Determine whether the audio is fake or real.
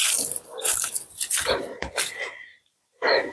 fake